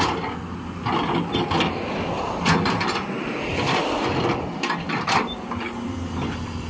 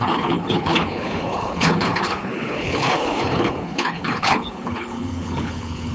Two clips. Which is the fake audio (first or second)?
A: second